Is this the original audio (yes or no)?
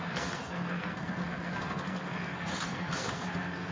no